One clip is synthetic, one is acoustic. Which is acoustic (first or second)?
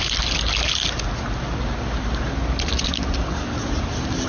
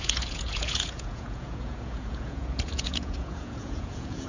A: first